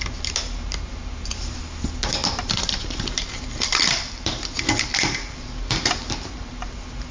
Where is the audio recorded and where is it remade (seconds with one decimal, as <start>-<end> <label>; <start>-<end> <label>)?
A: 0.0-2.2 recorded; 2.2-5.8 remade; 5.8-7.1 recorded